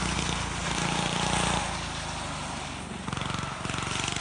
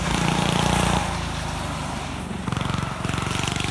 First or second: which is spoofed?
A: second